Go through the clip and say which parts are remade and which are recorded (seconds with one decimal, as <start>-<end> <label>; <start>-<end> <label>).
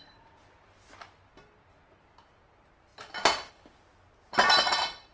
0.0-5.1 recorded